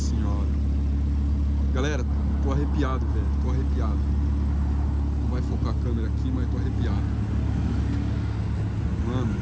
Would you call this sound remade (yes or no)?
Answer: no